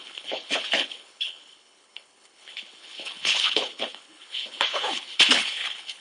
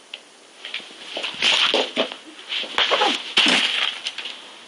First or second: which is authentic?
second